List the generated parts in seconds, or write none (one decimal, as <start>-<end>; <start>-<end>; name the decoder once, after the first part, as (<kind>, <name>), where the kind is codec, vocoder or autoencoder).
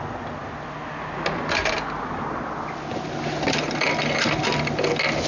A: none